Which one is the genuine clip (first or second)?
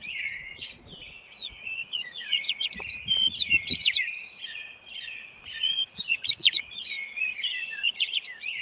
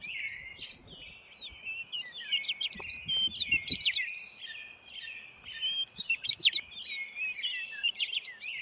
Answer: second